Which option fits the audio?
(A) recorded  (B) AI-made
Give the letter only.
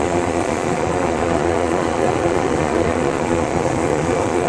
B